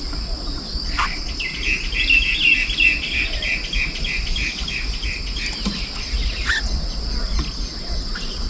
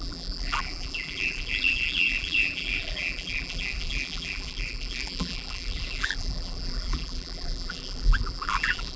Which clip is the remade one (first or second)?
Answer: second